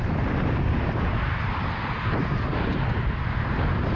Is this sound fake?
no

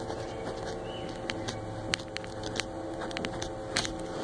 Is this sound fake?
no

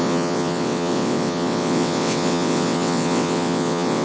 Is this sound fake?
yes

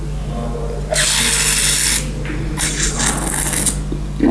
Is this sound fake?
no